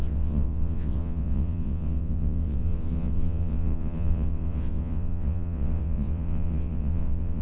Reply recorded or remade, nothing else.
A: remade